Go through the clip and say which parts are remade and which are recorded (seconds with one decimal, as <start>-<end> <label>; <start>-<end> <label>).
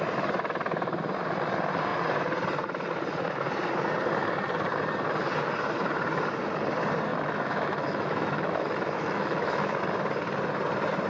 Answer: 0.0-7.1 recorded; 7.1-9.8 remade; 9.8-11.1 recorded